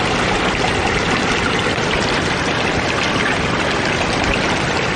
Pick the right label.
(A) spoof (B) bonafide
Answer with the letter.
B